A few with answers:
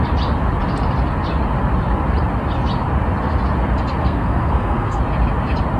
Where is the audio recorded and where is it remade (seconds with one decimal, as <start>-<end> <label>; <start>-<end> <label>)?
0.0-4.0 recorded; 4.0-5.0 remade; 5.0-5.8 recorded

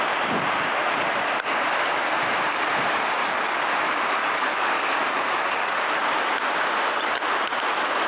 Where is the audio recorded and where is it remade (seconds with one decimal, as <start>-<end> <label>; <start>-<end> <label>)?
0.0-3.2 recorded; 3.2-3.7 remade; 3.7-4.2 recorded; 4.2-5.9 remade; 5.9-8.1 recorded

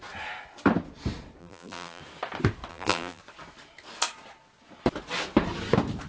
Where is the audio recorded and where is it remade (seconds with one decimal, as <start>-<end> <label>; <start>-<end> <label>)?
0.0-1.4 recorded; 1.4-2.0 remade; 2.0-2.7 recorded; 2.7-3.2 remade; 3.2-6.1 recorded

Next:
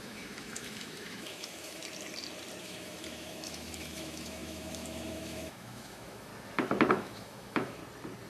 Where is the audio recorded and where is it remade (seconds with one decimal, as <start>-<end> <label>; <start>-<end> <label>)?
0.0-1.8 remade; 1.8-2.6 recorded; 2.6-6.3 remade; 6.3-6.9 recorded; 6.9-7.8 remade; 7.8-8.3 recorded